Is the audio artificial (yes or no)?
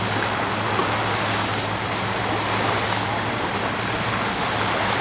no